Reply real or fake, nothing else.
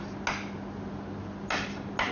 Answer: real